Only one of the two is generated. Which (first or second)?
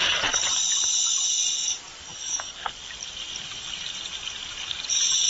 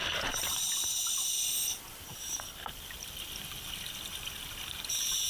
second